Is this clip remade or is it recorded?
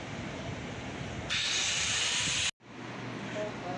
recorded